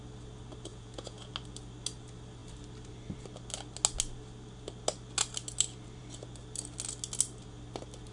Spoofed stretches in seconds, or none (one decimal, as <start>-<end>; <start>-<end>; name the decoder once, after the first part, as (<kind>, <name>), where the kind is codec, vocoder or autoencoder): 0.7-1.3 (vocoder, Vocos)